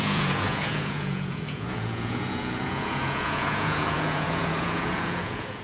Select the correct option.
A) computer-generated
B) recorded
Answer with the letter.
A